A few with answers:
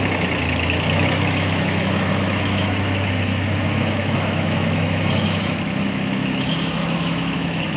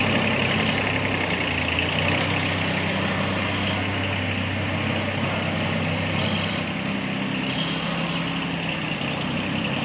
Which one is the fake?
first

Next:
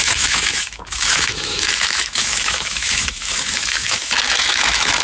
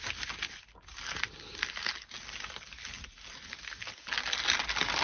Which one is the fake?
first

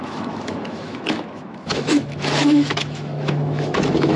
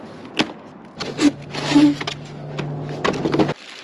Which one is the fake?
first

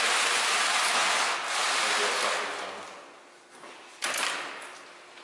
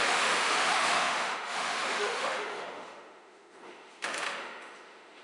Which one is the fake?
second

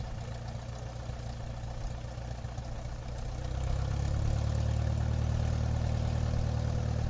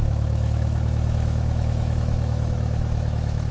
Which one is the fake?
second